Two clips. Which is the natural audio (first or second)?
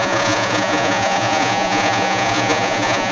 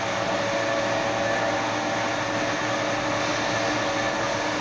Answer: second